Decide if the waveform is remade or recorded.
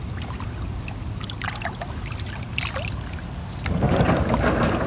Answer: recorded